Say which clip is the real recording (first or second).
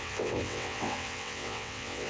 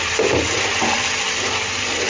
second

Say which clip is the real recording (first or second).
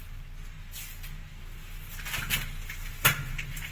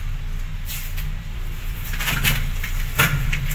first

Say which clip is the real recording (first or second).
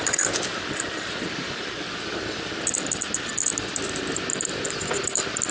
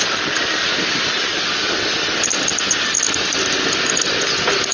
second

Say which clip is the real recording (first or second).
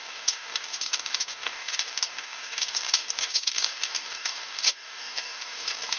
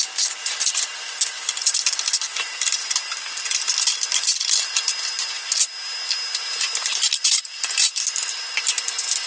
second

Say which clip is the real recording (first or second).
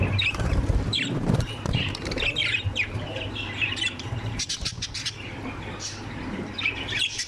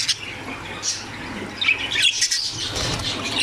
second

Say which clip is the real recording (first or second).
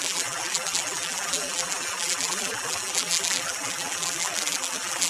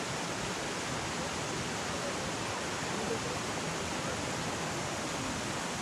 second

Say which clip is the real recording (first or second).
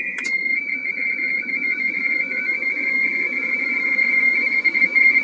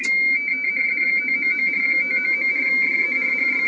second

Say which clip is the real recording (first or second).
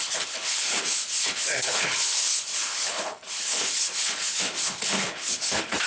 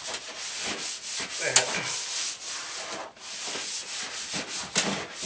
second